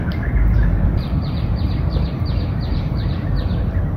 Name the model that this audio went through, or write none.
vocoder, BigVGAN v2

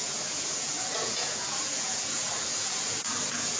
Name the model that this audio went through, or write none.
vocoder, Vocos